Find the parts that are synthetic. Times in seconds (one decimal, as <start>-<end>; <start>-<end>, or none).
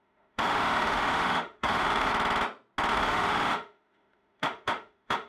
0.0-2.1; 2.9-5.3